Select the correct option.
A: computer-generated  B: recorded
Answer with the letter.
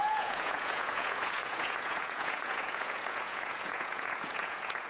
A